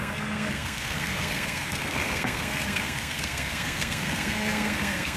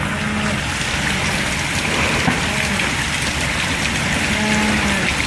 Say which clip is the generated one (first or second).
first